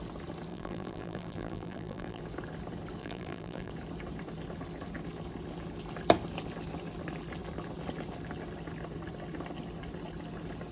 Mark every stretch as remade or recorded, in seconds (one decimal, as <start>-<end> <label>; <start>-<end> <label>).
0.0-0.5 recorded; 0.5-2.2 remade; 2.2-3.0 recorded; 3.0-3.7 remade; 3.7-10.7 recorded